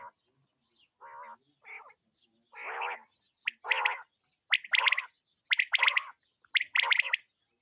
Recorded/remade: recorded